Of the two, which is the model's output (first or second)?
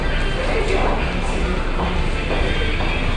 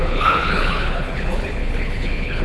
second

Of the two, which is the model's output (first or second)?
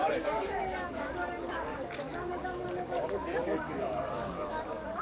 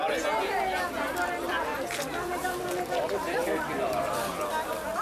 first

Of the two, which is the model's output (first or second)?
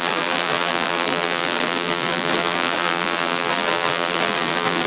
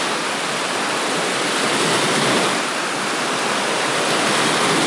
first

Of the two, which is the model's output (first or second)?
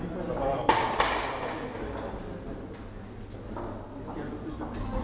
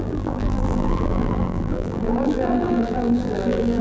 second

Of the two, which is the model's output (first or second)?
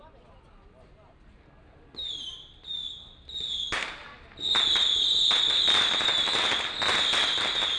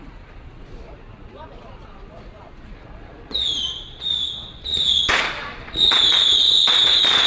second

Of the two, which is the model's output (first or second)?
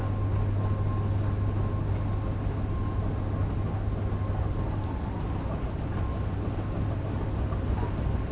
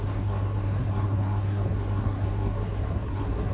second